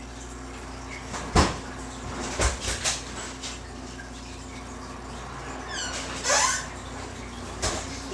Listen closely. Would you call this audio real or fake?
real